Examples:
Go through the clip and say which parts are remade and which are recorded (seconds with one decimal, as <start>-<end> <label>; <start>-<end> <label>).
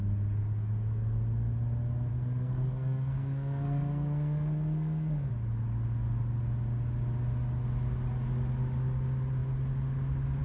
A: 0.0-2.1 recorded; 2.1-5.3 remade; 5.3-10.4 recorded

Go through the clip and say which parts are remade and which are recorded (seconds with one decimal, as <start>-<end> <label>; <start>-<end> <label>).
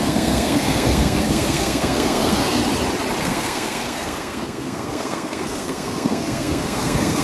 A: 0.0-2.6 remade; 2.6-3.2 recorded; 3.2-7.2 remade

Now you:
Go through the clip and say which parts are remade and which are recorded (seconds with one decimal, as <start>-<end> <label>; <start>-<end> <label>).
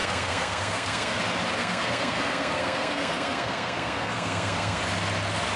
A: 0.0-1.2 remade; 1.2-1.6 recorded; 1.6-4.8 remade; 4.8-5.6 recorded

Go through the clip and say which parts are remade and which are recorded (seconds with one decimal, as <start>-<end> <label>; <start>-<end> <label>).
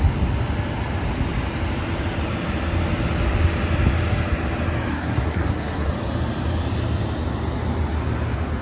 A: 0.0-4.9 recorded; 4.9-5.9 remade; 5.9-8.6 recorded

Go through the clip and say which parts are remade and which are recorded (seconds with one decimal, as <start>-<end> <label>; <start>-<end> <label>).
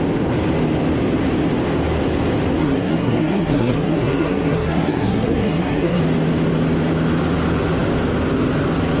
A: 0.0-2.6 recorded; 2.6-6.0 remade; 6.0-9.0 recorded